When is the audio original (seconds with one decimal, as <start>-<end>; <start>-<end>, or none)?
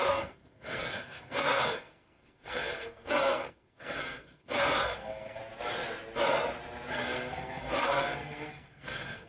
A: 5.4-6.9